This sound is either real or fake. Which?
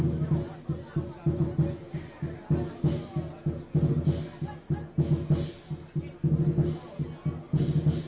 real